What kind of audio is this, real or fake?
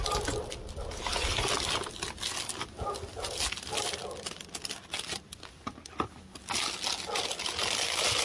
real